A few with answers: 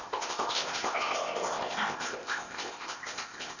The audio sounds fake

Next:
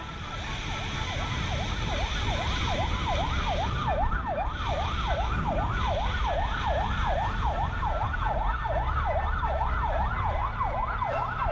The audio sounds real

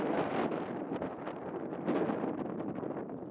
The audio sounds real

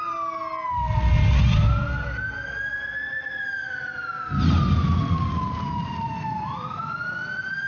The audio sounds real